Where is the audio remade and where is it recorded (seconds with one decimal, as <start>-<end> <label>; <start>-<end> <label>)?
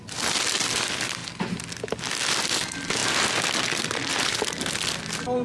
0.0-5.4 recorded